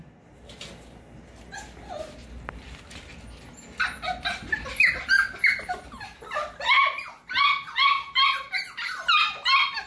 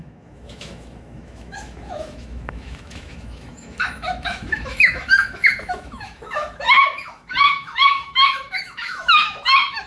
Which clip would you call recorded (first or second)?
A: first